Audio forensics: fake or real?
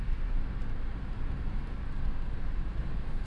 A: real